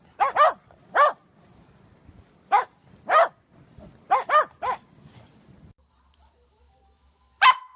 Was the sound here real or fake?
real